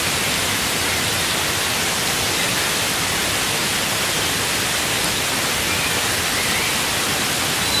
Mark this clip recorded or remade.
recorded